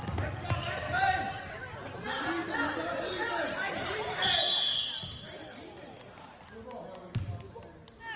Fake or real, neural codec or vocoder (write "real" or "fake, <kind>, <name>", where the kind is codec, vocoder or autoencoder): real